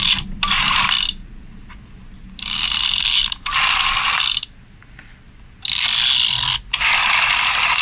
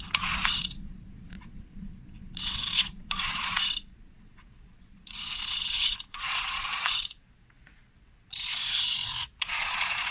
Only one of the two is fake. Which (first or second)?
second